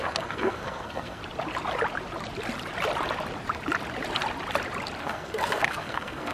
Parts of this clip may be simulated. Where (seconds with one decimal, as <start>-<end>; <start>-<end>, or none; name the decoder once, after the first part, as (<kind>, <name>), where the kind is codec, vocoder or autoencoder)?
0.0-1.2 (codec, SNAC); 5.0-6.3